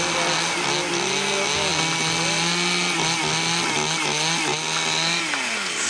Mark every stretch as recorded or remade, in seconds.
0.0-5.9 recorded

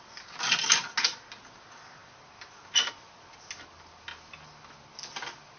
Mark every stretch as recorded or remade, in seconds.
0.0-5.6 recorded

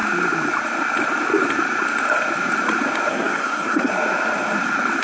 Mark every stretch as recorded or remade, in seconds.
0.0-3.1 recorded; 3.1-3.9 remade; 3.9-5.0 recorded

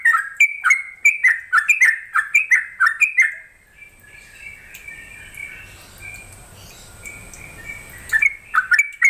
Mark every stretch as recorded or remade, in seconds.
0.0-9.1 recorded

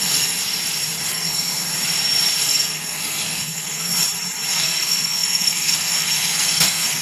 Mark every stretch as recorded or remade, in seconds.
0.0-0.4 remade; 0.4-1.1 recorded; 1.1-1.5 remade; 1.5-2.4 recorded; 2.4-3.9 remade; 3.9-4.5 recorded; 4.5-7.0 remade

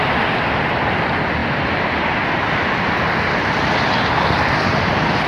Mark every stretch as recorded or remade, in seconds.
0.0-5.3 recorded

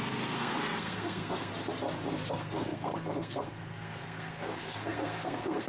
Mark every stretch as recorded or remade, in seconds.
0.0-1.5 remade; 1.5-2.3 recorded; 2.3-5.7 remade

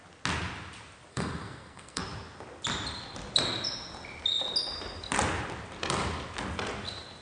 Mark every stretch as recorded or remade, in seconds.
0.0-1.1 recorded; 1.1-2.0 remade; 2.0-7.2 recorded